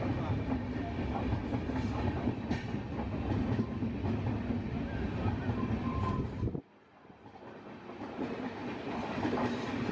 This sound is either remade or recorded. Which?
recorded